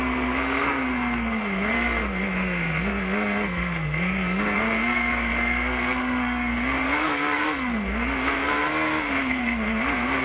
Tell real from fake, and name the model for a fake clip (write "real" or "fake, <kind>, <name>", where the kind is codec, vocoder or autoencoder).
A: fake, codec, SNAC